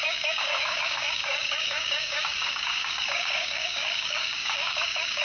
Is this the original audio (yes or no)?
no